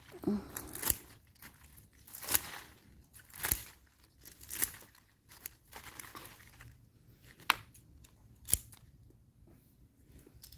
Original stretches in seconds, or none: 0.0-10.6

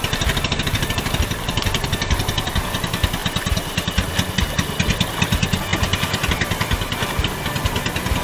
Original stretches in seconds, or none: 0.0-0.7; 2.5-3.2; 4.3-5.7; 6.3-8.2